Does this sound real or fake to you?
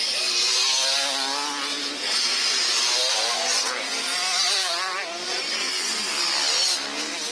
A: real